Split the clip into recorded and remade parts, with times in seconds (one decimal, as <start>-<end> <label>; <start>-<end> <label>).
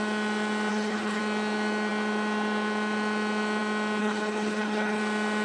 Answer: 0.0-0.7 recorded; 0.7-1.2 remade; 1.2-4.0 recorded; 4.0-5.0 remade; 5.0-5.4 recorded